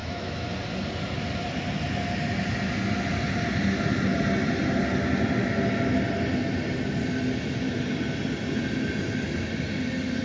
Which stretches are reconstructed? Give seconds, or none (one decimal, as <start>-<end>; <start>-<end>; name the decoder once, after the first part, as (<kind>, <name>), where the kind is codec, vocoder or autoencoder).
0.0-0.5 (autoencoder, DAC-VAE)

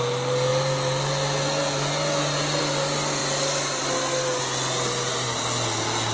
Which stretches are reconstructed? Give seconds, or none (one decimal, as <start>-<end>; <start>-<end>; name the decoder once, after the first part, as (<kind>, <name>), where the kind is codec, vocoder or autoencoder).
none

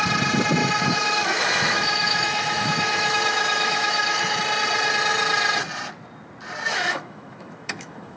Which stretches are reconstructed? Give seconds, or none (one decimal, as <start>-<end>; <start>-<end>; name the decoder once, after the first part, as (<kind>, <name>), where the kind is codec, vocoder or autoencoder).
0.6-4.4 (autoencoder, DAC-VAE); 6.7-8.2

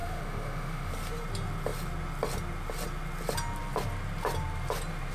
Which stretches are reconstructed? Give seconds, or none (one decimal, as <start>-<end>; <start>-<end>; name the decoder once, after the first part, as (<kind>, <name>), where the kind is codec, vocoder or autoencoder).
0.0-0.9 (autoencoder, DAC-VAE)